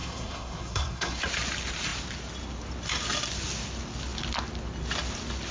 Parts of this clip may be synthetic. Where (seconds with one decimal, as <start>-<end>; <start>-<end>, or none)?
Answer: 0.0-1.2